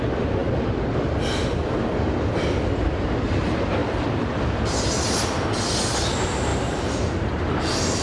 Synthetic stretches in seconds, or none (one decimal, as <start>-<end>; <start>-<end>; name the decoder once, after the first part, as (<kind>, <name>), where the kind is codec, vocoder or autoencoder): 0.4-2.3 (vocoder, BigVGAN v2); 3.8-5.8; 6.5-7.6

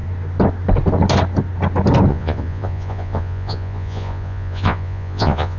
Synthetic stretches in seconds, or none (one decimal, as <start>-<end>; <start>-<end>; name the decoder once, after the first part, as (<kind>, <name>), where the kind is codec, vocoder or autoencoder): 2.1-5.6 (vocoder, Vocos)

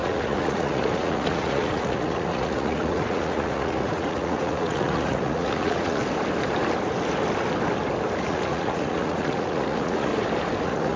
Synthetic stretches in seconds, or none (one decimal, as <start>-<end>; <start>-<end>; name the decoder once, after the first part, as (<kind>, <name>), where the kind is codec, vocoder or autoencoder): 0.0-6.0 (vocoder, Vocos); 8.2-10.1; 10.6-11.0

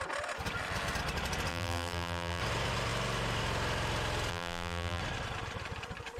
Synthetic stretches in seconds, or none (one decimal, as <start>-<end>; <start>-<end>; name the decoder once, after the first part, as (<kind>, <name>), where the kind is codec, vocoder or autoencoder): 1.5-2.4 (vocoder, BigVGAN v2); 4.3-5.0

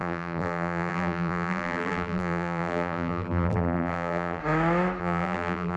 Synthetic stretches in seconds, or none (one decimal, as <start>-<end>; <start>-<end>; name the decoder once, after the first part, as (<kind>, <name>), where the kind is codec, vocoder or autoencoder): 0.0-4.4 (vocoder, BigVGAN v2); 5.0-5.8

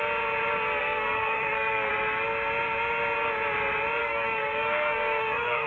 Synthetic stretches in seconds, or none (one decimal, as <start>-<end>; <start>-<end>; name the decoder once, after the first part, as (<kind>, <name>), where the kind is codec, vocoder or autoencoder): 0.8-1.9 (codec, SNAC); 4.0-5.7

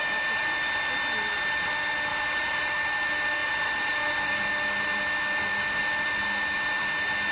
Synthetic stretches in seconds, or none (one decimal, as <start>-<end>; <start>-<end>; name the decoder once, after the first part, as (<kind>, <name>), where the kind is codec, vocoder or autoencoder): 2.1-2.7 (vocoder, BigVGAN v2); 3.4-4.5

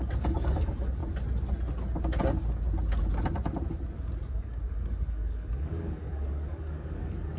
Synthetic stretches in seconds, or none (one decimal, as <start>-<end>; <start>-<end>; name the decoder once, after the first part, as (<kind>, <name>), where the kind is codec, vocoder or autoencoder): 0.0-1.0 (codec, DAC); 4.3-7.4